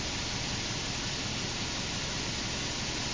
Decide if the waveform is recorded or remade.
recorded